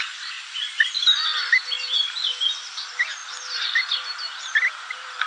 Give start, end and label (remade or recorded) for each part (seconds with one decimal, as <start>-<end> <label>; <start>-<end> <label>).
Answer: 0.0-1.3 remade; 1.3-2.1 recorded; 2.1-3.2 remade; 3.2-4.7 recorded; 4.7-5.3 remade